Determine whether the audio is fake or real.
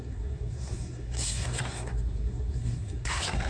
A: fake